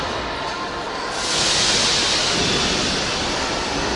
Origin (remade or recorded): recorded